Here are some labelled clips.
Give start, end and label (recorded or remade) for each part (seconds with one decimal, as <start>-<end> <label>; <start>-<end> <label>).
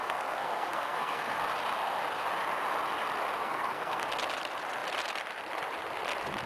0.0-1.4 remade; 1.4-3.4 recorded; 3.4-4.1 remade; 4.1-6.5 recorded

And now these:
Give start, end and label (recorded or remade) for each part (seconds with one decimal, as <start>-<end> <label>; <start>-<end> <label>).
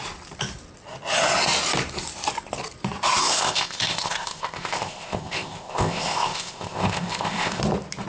0.0-3.2 recorded; 3.2-7.6 remade; 7.6-8.1 recorded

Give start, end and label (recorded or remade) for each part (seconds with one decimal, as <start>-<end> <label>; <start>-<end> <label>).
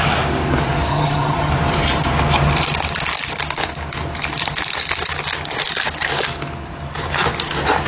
0.0-0.9 recorded; 0.9-1.5 remade; 1.5-7.9 recorded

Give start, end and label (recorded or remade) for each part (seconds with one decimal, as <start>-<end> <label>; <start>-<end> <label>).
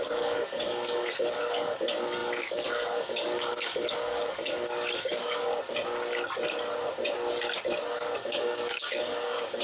0.0-5.5 remade; 5.5-7.9 recorded; 7.9-9.6 remade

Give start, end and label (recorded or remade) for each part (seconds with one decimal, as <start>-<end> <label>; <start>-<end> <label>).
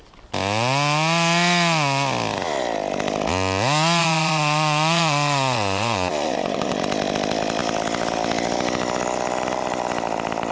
0.0-4.0 recorded; 4.0-6.8 remade; 6.8-10.5 recorded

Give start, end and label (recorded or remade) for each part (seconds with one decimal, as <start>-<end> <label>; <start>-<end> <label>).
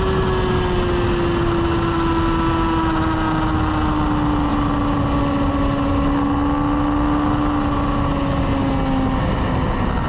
0.0-10.1 recorded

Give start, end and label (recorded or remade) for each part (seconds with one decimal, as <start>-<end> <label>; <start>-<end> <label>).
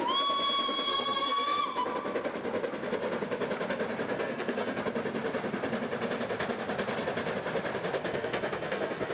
0.0-0.9 recorded; 0.9-1.6 remade; 1.6-4.1 recorded; 4.1-4.8 remade; 4.8-8.0 recorded; 8.0-9.1 remade